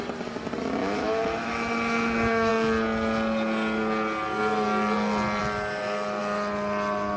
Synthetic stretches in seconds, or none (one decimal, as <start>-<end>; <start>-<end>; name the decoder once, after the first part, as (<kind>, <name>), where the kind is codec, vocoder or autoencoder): 0.8-2.5 (autoencoder, DAC-VAE)